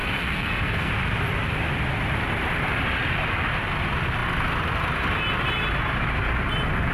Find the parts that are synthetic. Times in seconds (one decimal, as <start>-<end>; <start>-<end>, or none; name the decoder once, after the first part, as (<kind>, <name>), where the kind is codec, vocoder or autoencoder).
0.0-0.9 (codec, SNAC)